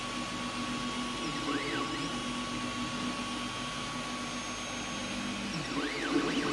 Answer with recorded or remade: recorded